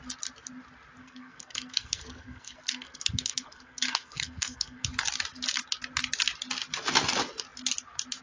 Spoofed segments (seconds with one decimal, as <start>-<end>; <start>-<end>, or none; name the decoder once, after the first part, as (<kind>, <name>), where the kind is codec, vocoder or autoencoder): 1.0-4.9 (codec, SNAC)